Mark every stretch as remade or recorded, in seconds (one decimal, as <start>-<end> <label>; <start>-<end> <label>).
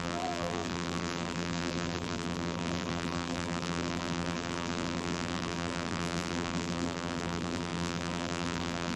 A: 0.0-9.0 remade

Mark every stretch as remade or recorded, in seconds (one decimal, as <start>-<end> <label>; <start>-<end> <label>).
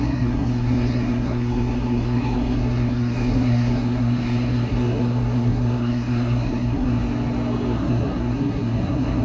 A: 0.0-7.0 remade; 7.0-7.7 recorded; 7.7-9.2 remade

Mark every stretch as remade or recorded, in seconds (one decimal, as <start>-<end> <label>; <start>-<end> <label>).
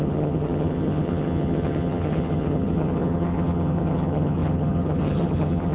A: 0.0-5.7 remade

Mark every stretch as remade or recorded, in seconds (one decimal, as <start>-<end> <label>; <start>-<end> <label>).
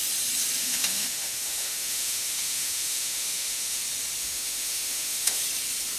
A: 0.0-0.6 recorded; 0.6-3.8 remade; 3.8-4.2 recorded; 4.2-5.4 remade; 5.4-6.0 recorded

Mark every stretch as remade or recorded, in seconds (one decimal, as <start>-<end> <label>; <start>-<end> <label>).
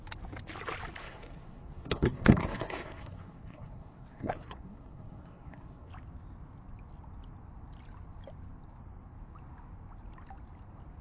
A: 0.0-1.0 recorded; 1.0-5.9 remade; 5.9-11.0 recorded